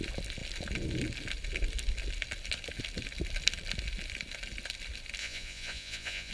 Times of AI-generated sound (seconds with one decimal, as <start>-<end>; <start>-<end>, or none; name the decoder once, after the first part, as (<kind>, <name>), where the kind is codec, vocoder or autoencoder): 5.2-6.3 (vocoder, Vocos)